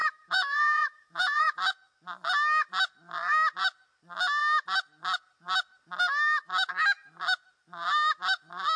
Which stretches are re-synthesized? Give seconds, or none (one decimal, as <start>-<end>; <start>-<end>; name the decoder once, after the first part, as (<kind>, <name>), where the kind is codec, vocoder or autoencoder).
0.0-1.7 (vocoder, Vocos)